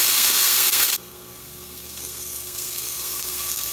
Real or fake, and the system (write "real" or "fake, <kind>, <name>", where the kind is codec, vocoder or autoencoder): fake, codec, SNAC